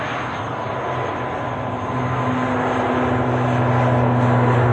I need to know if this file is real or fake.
real